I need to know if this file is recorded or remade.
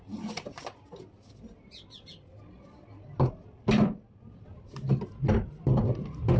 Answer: recorded